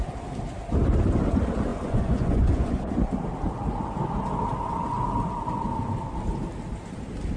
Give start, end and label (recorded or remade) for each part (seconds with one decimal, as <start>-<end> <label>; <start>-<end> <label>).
0.0-1.7 recorded; 1.7-2.9 remade; 2.9-7.4 recorded